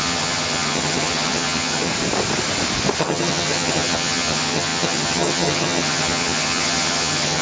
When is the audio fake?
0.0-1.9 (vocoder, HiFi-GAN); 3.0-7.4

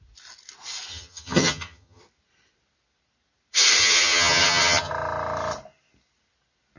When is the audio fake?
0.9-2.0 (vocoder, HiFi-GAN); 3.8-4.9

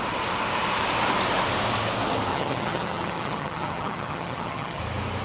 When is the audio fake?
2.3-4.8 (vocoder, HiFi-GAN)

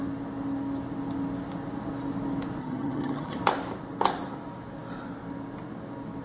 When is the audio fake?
2.6-3.4 (vocoder, HiFi-GAN)

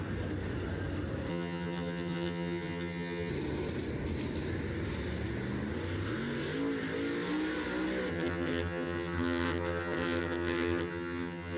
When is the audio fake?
1.3-3.3 (vocoder, HiFi-GAN); 8.1-11.6

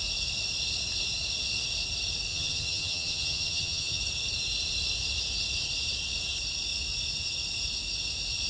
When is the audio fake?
2.3-4.0 (vocoder, HiFi-GAN)